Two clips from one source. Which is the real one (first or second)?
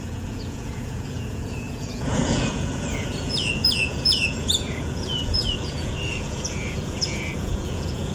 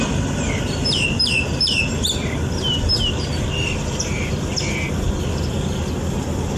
second